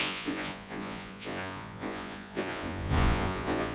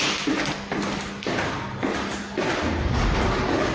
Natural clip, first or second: second